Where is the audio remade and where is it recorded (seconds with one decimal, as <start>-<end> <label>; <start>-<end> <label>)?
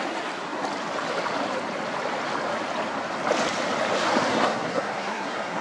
0.0-4.3 recorded; 4.3-5.6 remade